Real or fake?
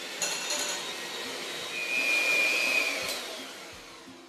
real